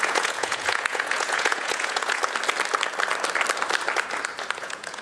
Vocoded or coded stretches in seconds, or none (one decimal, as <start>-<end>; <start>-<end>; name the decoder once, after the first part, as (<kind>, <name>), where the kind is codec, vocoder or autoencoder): 0.0-2.2 (vocoder, Vocos); 4.6-5.0